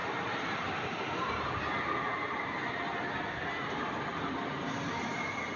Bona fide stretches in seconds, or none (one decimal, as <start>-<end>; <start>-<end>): 0.0-5.6